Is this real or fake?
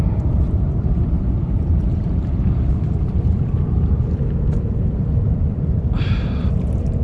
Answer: fake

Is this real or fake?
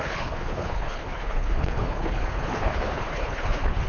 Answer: fake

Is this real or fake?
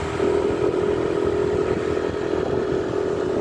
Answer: real